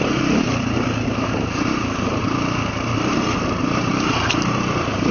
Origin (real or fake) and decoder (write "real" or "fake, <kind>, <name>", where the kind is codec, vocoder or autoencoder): fake, vocoder, BigVGAN v2